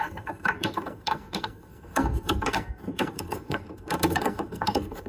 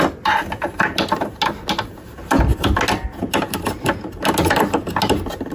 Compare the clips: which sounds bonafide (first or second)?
second